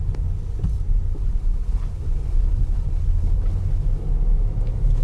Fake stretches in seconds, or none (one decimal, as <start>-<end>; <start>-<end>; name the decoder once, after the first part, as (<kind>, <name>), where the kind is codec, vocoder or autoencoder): 1.1-4.1 (codec, HILCodec)